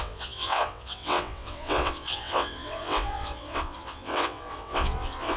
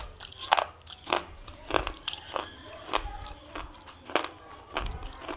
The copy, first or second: first